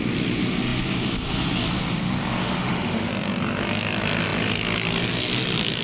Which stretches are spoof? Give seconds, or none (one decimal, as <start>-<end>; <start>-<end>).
2.4-3.1

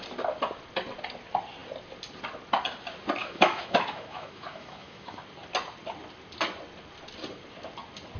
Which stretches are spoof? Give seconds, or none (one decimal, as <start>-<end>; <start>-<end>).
3.2-5.2

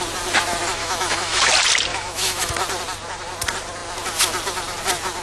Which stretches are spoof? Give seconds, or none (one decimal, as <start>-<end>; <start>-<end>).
0.8-1.4; 1.9-2.5

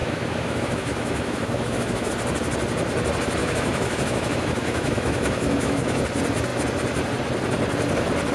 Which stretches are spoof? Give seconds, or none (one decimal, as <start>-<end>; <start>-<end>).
0.0-2.1; 3.4-6.0